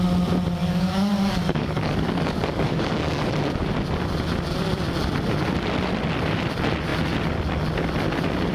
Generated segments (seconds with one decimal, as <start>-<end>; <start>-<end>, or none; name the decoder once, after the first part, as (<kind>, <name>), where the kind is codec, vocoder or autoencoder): 0.6-3.3 (codec, DAC)

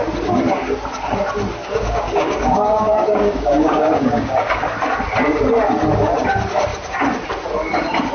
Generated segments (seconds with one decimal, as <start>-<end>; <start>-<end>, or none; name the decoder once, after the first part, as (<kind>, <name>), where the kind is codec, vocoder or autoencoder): 1.6-4.6 (codec, DAC)

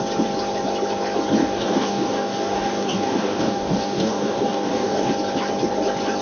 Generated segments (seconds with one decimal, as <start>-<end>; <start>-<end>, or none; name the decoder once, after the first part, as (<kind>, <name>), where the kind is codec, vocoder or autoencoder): 1.4-5.1 (codec, DAC)

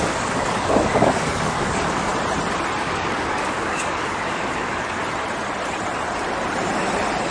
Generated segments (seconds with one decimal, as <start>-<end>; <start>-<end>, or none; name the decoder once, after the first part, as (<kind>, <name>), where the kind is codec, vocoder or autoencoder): 0.0-2.1 (codec, DAC); 2.8-5.0

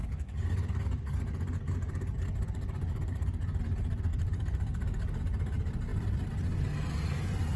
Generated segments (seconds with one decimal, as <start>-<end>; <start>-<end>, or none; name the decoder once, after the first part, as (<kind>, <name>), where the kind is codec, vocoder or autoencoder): 0.0-3.6 (codec, DAC); 4.1-5.2